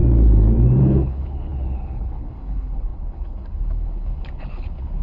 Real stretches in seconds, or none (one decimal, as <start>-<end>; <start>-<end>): 0.0-0.8